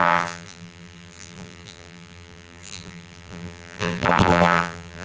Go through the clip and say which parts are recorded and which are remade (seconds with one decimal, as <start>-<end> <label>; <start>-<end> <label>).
0.0-5.0 remade

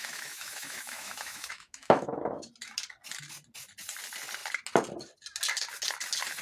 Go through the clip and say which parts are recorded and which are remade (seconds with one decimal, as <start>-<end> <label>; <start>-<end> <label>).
0.0-2.5 remade; 2.5-6.4 recorded

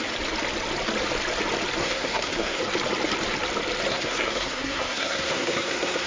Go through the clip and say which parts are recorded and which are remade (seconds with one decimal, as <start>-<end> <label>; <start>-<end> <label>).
0.0-1.8 recorded; 1.8-2.6 remade; 2.6-3.9 recorded; 3.9-6.1 remade

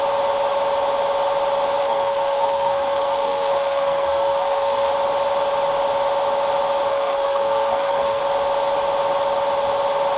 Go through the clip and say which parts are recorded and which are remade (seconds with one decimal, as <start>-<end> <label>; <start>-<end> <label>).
0.0-1.8 recorded; 1.8-4.9 remade; 4.9-6.9 recorded; 6.9-8.2 remade; 8.2-10.2 recorded

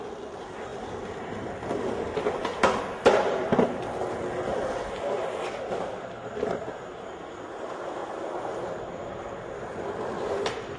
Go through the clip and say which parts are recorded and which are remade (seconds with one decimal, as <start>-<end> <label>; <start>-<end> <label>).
0.0-10.8 recorded

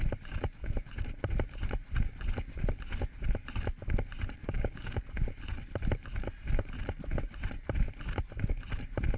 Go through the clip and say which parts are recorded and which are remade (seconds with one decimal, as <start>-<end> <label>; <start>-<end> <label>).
0.0-4.4 recorded; 4.4-5.0 remade; 5.0-9.2 recorded